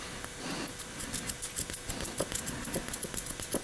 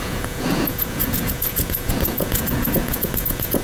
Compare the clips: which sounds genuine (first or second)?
first